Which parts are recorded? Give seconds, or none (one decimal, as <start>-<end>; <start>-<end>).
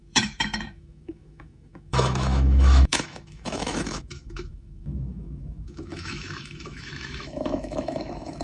none